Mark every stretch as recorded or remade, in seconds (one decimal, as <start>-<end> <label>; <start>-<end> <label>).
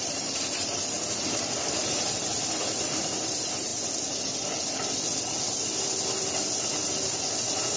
0.0-1.8 remade; 1.8-2.6 recorded; 2.6-3.7 remade; 3.7-7.3 recorded; 7.3-7.8 remade